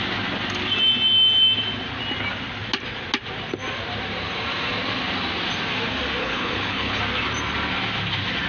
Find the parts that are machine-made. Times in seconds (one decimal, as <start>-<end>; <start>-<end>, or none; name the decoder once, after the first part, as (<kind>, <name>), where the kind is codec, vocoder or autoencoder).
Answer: 6.2-7.0 (codec, HILCodec)